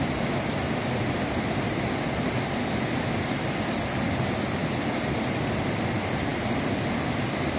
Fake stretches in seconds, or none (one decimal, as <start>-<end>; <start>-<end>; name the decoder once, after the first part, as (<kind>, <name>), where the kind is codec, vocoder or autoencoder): none